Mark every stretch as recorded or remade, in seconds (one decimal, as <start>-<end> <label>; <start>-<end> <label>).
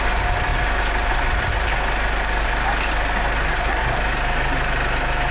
0.0-3.5 recorded; 3.5-4.0 remade; 4.0-5.3 recorded